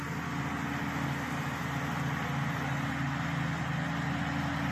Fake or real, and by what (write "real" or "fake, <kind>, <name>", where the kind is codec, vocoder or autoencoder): real